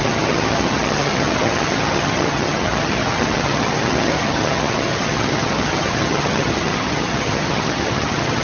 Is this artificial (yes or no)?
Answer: yes